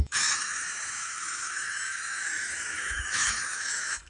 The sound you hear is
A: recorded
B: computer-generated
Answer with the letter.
B